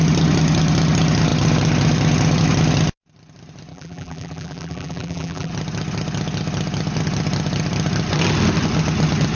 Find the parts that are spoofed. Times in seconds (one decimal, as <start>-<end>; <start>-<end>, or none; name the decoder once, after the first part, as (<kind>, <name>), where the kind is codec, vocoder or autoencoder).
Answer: 3.7-5.5 (vocoder, BigVGAN v2)